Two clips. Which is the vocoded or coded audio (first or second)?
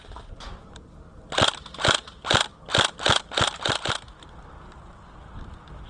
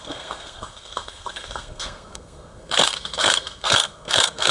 second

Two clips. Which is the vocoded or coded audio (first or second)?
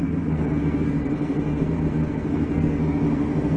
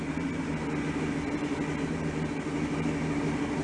first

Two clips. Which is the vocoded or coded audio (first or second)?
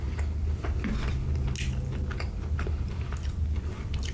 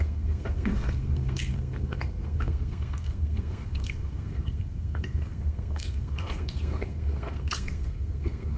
second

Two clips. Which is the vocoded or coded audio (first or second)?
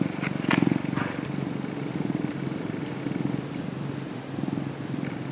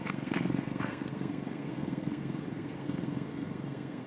second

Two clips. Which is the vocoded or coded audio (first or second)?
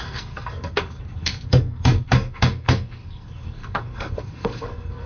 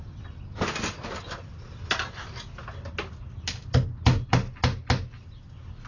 first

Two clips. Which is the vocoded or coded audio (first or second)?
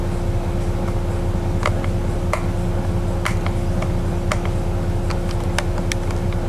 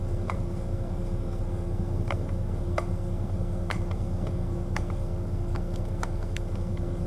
second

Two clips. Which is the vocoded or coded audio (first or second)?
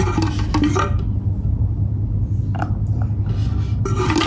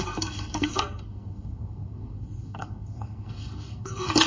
second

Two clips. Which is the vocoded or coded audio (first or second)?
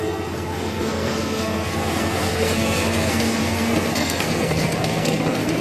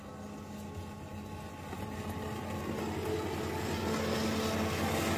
first